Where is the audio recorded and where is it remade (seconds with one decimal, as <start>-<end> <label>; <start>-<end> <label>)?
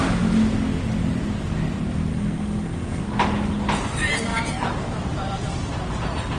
0.0-2.1 recorded; 2.1-3.0 remade; 3.0-6.4 recorded